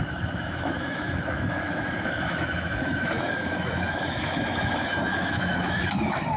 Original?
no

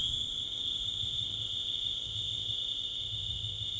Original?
no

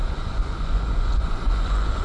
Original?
no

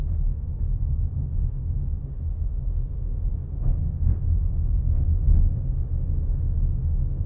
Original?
no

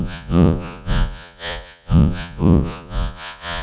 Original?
no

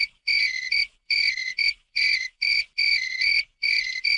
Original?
no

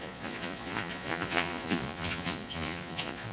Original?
no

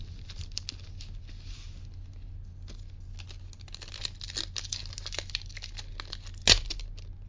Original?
yes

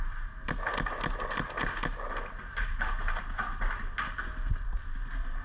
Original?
yes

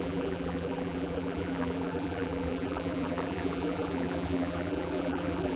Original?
no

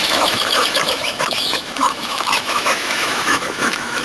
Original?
no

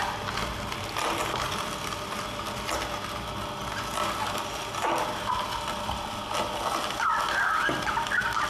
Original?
yes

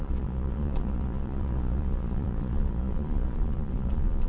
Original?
no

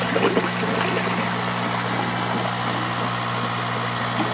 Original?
yes